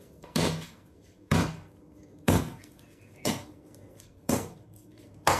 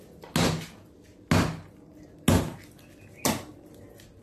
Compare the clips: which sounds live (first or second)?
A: second